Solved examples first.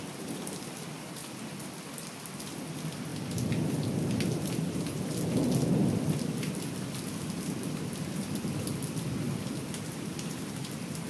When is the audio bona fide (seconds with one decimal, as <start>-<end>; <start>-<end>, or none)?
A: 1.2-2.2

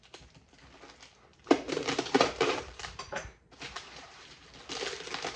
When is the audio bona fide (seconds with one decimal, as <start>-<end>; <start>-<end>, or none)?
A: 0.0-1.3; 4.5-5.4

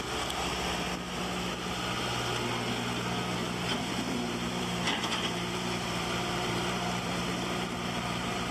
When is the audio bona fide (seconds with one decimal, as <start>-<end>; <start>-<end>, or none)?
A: 0.0-3.4